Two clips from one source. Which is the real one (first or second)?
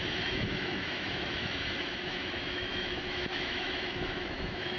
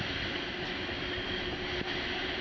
second